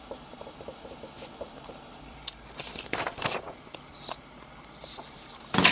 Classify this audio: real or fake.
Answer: fake